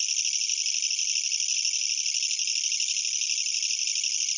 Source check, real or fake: real